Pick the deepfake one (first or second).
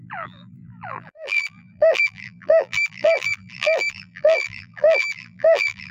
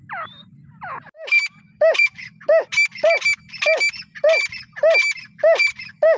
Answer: first